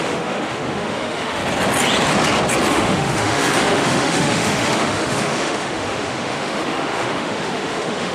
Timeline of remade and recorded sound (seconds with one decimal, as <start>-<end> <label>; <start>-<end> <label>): 0.0-1.4 remade; 1.4-2.7 recorded; 2.7-8.1 remade